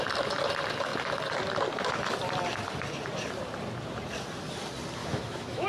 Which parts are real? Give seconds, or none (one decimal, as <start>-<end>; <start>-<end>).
0.0-5.0